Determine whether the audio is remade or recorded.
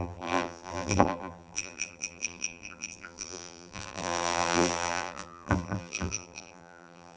remade